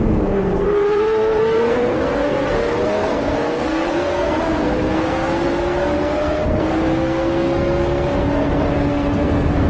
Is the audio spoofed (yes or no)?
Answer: yes